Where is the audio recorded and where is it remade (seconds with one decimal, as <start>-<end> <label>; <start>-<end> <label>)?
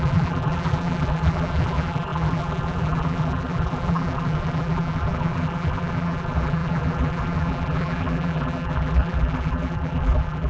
0.0-10.5 remade